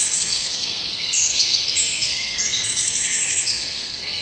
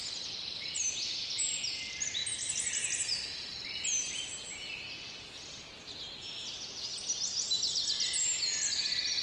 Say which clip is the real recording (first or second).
second